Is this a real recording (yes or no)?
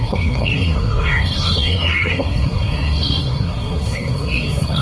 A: no